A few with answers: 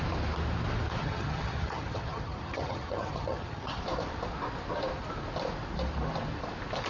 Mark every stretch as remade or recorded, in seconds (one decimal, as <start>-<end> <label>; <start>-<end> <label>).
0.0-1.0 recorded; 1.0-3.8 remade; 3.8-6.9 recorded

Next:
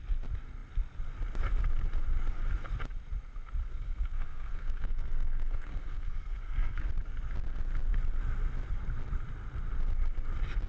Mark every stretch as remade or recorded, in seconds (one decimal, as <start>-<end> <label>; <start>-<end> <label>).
0.0-3.6 recorded; 3.6-6.9 remade; 6.9-10.7 recorded

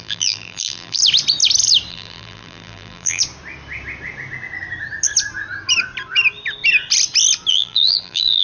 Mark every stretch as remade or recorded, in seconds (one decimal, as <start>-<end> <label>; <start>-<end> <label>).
0.0-1.0 remade; 1.0-1.9 recorded; 1.9-3.2 remade; 3.2-7.5 recorded; 7.5-8.4 remade

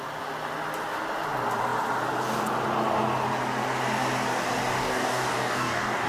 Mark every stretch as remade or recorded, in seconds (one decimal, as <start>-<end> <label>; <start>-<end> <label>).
0.0-4.7 recorded; 4.7-6.1 remade

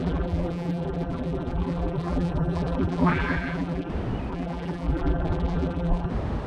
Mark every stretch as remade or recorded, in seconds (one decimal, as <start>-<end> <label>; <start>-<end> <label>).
0.0-3.9 remade; 3.9-4.3 recorded; 4.3-6.1 remade; 6.1-6.5 recorded

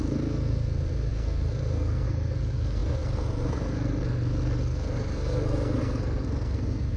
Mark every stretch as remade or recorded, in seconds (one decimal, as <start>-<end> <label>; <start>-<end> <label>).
0.0-7.0 remade

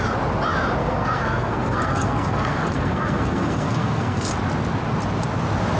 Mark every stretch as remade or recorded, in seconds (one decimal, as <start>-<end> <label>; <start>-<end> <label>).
0.0-0.8 recorded; 0.8-4.3 remade; 4.3-5.8 recorded

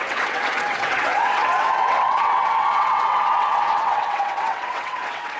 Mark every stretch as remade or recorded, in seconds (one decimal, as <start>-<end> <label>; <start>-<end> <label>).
0.0-5.4 remade